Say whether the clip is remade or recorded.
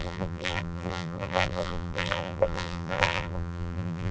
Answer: remade